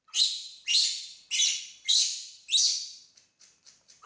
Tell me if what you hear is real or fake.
real